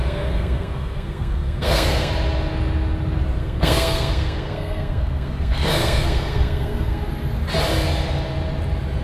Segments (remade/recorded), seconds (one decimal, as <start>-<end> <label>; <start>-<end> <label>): 0.0-2.1 remade; 2.1-3.4 recorded; 3.4-7.1 remade; 7.1-9.0 recorded